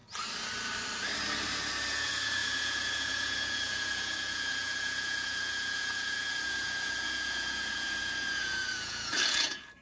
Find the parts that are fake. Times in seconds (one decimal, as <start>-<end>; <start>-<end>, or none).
1.9-9.8